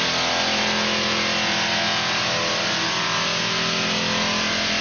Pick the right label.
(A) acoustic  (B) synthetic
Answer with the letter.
A